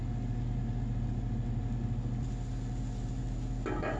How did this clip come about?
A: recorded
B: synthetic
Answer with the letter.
A